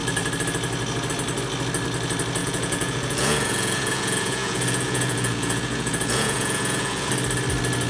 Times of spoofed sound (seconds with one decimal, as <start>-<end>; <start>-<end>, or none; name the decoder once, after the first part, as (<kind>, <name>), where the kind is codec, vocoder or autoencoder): 2.4-7.1 (vocoder, Vocos)